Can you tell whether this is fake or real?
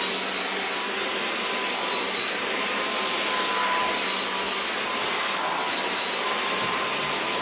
real